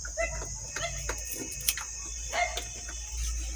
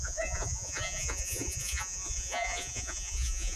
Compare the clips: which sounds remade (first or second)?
second